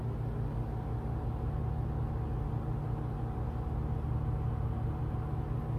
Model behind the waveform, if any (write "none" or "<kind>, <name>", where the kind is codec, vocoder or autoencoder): none